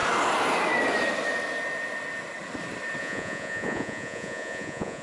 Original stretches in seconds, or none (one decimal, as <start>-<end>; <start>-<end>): 0.0-3.0